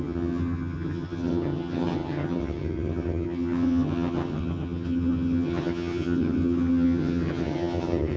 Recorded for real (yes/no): no